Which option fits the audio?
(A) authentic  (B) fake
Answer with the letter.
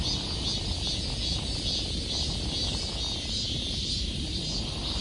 A